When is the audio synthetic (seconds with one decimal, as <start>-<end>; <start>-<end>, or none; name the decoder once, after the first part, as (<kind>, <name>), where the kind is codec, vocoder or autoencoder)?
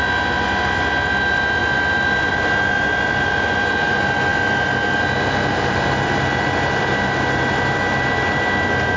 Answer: none